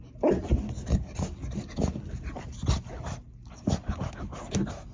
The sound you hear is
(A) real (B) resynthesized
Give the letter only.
A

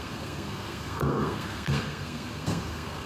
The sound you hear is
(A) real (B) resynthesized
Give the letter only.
B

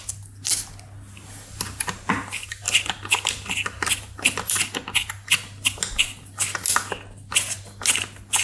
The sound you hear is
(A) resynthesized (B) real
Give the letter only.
B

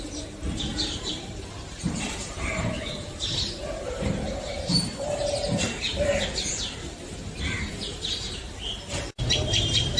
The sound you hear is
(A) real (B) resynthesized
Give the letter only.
B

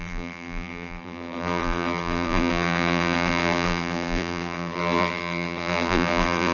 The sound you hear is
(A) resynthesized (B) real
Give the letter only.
A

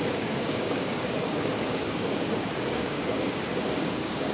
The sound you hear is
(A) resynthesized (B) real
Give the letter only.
A